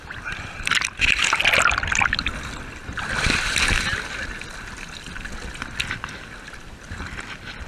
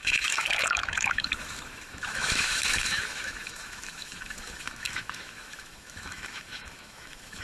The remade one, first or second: second